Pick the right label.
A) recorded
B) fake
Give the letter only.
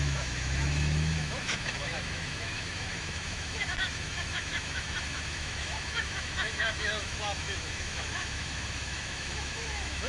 B